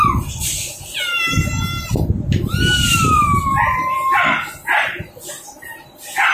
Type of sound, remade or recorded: recorded